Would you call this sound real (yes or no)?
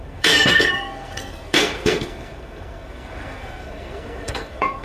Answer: no